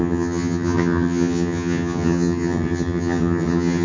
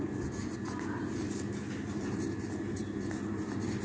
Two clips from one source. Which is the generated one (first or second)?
first